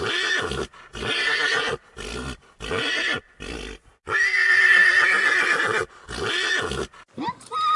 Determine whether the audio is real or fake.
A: real